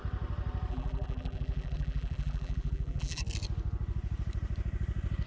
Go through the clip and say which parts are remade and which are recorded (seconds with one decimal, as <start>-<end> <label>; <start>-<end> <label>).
0.0-0.7 recorded; 0.7-3.2 remade; 3.2-5.3 recorded